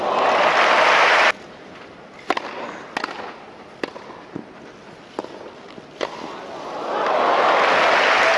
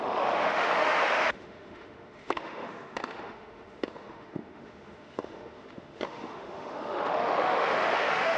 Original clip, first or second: first